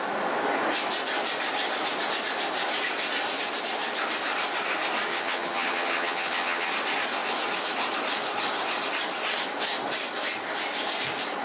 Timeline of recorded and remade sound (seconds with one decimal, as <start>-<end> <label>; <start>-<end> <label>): 0.0-5.1 recorded; 5.1-6.7 remade; 6.7-11.4 recorded